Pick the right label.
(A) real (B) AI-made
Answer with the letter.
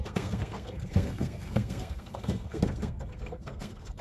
B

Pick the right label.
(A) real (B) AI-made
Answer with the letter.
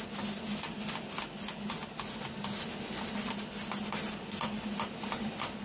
A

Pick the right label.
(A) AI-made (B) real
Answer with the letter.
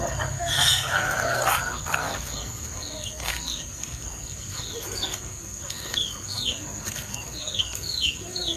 A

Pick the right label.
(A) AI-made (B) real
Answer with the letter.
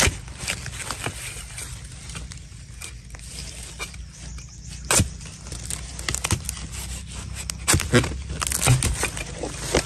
B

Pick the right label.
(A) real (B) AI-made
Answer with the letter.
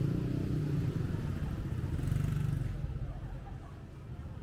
A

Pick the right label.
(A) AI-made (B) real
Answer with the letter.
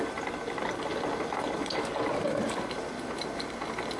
B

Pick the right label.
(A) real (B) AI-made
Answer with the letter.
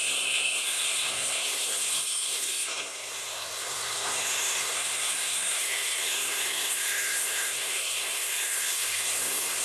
B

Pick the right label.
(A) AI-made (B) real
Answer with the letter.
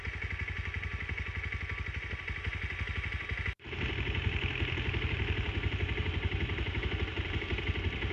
B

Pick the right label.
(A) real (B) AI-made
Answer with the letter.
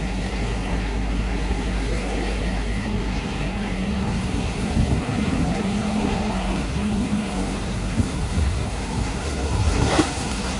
B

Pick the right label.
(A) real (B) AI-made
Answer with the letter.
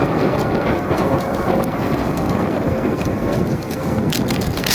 B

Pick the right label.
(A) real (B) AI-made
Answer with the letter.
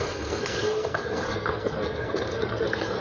B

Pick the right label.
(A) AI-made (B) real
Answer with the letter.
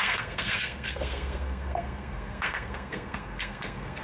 A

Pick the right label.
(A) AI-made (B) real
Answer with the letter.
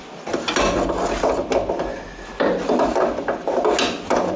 B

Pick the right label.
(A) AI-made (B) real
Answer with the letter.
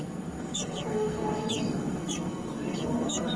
A